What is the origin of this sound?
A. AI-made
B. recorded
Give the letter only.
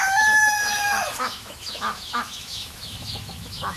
A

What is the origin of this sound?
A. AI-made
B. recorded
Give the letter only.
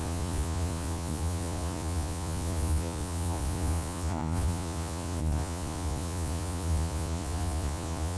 A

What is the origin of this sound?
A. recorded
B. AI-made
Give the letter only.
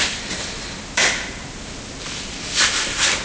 A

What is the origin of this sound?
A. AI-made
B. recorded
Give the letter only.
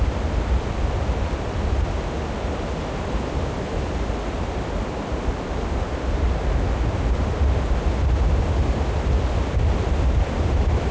B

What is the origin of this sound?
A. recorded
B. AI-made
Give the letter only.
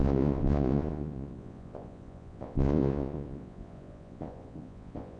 B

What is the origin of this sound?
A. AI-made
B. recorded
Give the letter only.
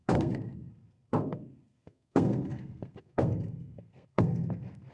A